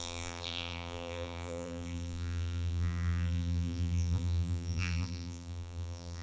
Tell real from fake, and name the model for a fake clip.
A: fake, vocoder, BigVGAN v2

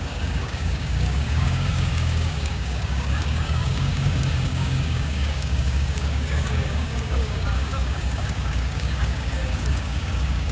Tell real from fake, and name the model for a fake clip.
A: fake, codec, DAC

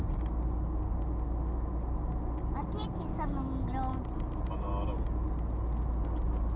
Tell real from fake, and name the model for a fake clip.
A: real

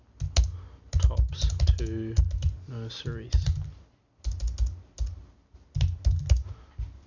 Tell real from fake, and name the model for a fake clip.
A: real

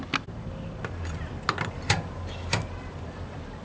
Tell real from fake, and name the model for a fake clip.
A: real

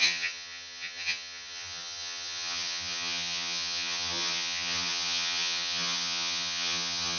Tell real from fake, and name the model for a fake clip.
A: fake, vocoder, HiFi-GAN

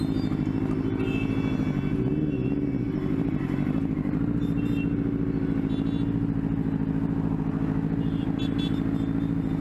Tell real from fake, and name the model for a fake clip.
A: real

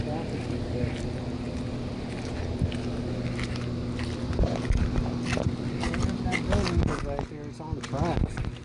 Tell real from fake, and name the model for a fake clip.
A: real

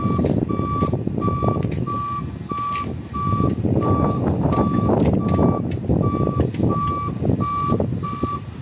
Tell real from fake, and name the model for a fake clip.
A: real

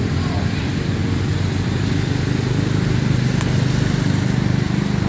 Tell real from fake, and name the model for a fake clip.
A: real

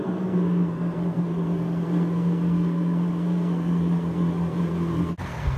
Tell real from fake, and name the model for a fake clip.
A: fake, codec, SNAC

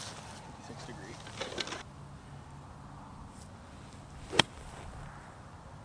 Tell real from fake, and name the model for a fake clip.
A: real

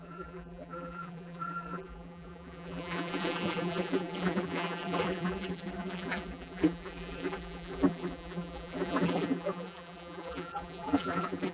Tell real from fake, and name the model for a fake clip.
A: fake, vocoder, BigVGAN v2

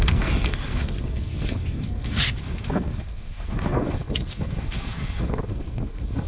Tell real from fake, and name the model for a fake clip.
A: fake, codec, SNAC